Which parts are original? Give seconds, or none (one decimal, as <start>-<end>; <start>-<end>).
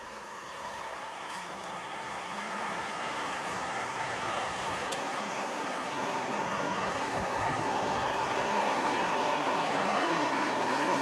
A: none